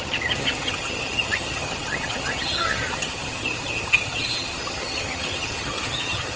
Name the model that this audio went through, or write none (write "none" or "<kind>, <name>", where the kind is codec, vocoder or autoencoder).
vocoder, HiFi-GAN